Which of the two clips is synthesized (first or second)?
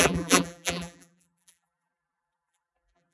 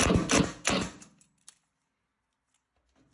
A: first